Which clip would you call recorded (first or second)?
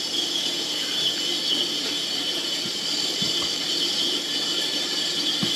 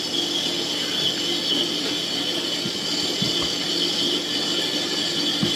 second